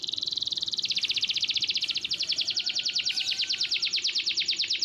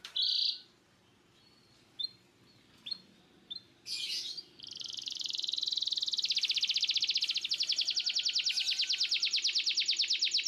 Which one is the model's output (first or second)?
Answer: first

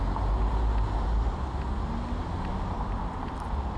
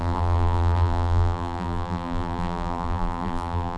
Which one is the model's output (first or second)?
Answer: second